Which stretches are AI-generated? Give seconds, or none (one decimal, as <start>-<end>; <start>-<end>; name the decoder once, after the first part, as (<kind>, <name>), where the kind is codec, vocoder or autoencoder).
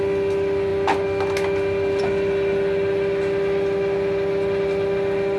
none